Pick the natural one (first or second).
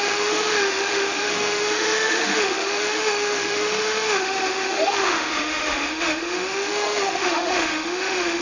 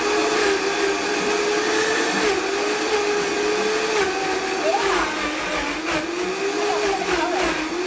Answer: second